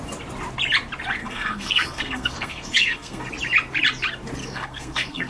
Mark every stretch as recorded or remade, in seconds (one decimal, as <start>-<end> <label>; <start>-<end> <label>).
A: 0.0-1.2 recorded; 1.2-3.3 remade; 3.3-4.4 recorded; 4.4-5.3 remade